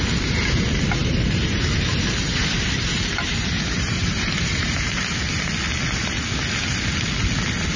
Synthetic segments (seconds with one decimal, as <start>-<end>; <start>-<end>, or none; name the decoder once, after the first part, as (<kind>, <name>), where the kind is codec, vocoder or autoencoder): 1.0-5.5 (vocoder, BigVGAN v2)